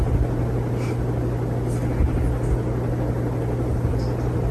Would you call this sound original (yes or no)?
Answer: yes